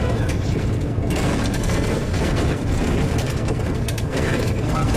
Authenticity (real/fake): fake